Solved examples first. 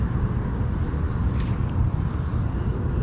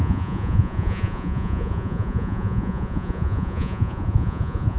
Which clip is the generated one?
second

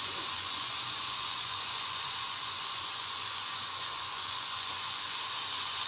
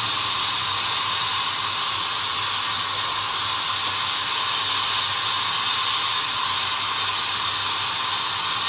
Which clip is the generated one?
first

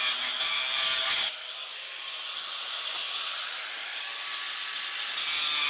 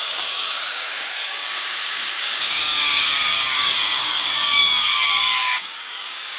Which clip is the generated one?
second